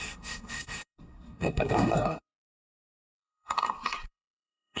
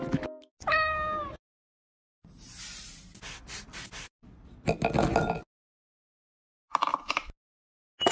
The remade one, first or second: first